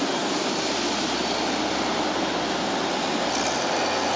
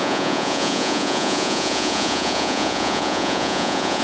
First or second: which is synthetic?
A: second